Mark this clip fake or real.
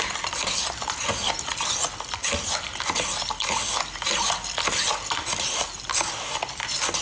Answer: real